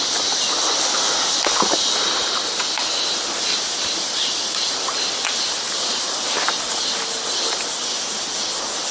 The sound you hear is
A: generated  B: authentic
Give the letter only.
B